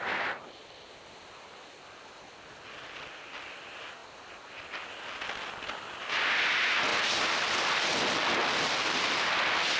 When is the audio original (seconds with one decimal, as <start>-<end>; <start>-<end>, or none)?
0.0-9.8